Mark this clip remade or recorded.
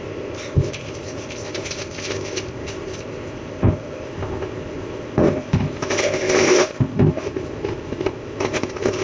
remade